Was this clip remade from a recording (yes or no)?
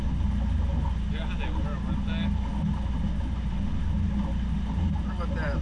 no